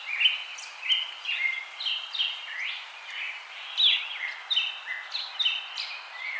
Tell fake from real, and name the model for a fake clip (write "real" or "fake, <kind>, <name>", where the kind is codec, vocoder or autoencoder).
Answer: real